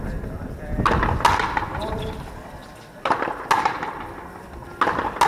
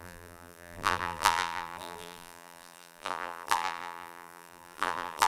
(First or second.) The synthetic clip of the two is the second